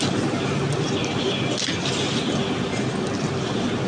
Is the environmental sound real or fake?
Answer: real